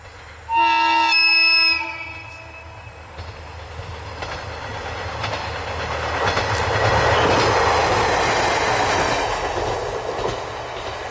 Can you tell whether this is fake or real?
real